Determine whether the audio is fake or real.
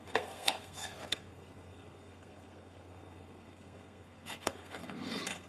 fake